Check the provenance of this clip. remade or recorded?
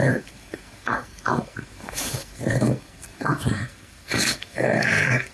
remade